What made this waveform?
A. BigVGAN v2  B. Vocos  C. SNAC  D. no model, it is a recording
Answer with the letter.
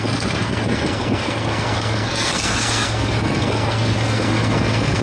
C